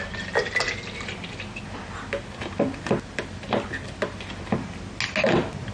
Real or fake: real